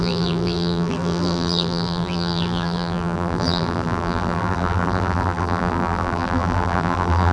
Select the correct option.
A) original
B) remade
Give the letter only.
B